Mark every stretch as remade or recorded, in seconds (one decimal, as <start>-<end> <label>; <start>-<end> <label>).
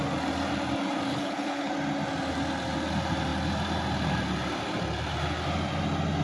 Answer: 0.0-1.1 recorded; 1.1-1.7 remade; 1.7-6.2 recorded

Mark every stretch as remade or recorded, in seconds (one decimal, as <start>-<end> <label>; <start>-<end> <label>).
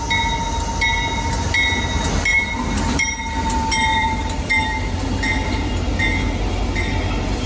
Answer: 0.0-2.3 recorded; 2.3-3.3 remade; 3.3-3.9 recorded; 3.9-4.5 remade; 4.5-7.5 recorded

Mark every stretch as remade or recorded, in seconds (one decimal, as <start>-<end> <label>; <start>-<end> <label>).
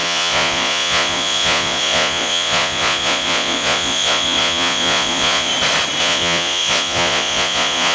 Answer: 0.0-5.5 remade; 5.5-6.0 recorded; 6.0-7.9 remade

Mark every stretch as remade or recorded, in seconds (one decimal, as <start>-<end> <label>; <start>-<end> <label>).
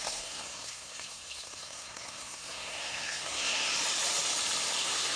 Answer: 0.0-3.7 remade; 3.7-4.8 recorded; 4.8-5.2 remade